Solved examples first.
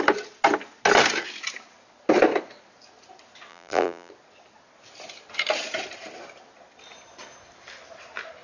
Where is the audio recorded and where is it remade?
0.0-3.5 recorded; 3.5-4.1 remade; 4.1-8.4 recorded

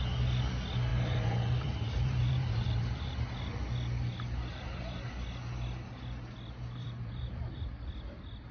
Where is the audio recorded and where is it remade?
0.0-0.9 recorded; 0.9-3.2 remade; 3.2-4.5 recorded; 4.5-5.1 remade; 5.1-6.8 recorded; 6.8-7.6 remade; 7.6-8.5 recorded

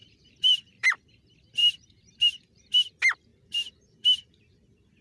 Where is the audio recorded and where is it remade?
0.0-1.1 remade; 1.1-1.6 recorded; 1.6-2.7 remade; 2.7-3.3 recorded; 3.3-4.4 remade; 4.4-5.0 recorded

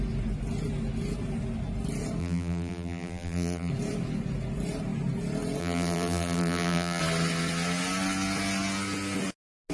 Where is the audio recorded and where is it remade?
0.0-2.2 recorded; 2.2-3.7 remade; 3.7-5.6 recorded; 5.6-7.0 remade; 7.0-9.7 recorded

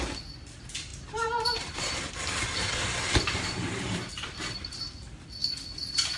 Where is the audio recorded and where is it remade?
0.0-0.9 recorded; 0.9-4.6 remade; 4.6-6.2 recorded